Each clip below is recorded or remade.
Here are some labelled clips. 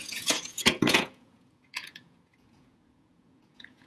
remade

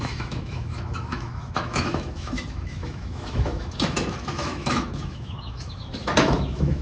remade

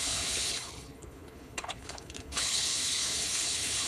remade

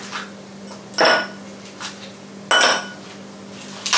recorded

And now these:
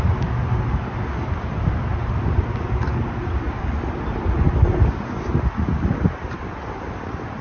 recorded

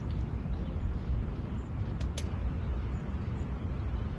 recorded